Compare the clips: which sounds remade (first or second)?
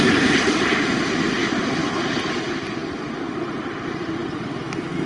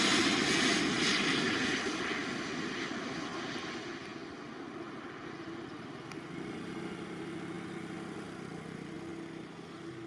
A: first